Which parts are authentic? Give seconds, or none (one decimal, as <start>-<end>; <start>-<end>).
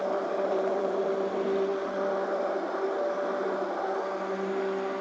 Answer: 1.0-5.0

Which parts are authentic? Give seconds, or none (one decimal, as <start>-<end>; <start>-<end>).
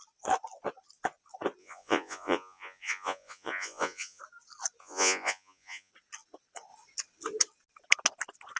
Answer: 0.0-1.6; 4.2-4.8; 5.9-8.6